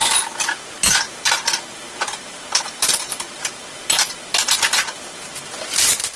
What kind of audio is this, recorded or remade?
remade